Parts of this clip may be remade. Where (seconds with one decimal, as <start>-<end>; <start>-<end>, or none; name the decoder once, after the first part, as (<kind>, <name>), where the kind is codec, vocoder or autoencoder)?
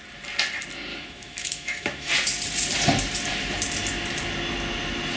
0.9-2.1 (autoencoder, DAC-VAE)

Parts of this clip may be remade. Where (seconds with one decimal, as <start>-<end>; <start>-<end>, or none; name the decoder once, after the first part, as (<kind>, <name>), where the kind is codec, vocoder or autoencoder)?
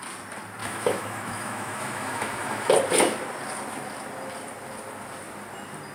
0.6-2.7 (autoencoder, DAC-VAE)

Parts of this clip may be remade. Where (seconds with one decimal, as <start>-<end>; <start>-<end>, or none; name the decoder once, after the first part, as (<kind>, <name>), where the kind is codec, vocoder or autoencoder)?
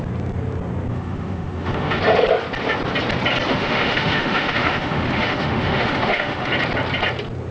0.9-2.0 (autoencoder, DAC-VAE); 3.5-6.5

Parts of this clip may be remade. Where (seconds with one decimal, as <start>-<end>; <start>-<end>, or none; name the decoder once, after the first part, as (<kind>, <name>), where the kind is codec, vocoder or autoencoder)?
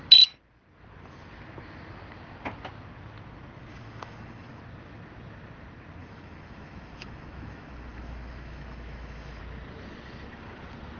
3.7-4.6 (autoencoder, DAC-VAE); 6.0-9.4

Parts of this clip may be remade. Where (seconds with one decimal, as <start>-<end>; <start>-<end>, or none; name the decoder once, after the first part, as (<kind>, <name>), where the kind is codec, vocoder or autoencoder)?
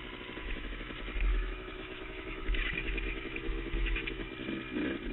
0.4-0.9 (autoencoder, DAC-VAE); 1.3-4.3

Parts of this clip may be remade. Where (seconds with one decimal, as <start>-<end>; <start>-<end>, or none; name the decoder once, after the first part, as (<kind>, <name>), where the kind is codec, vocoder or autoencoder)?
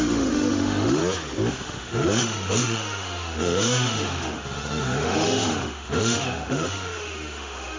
0.0-1.0 (autoencoder, DAC-VAE); 1.5-7.8